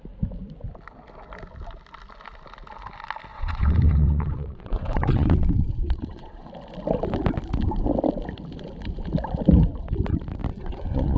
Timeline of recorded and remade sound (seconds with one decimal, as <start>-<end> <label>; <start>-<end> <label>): 0.0-3.3 recorded; 3.3-6.5 remade; 6.5-10.5 recorded; 10.5-11.2 remade